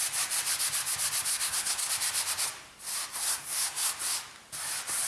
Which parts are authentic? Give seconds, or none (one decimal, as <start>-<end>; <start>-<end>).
0.0-1.3; 1.9-3.1; 3.9-5.1